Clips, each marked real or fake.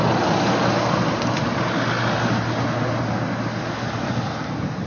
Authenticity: real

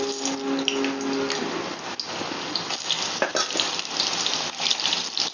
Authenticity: real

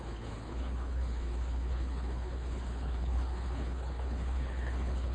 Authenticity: fake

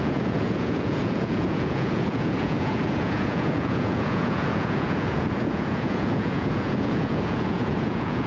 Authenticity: fake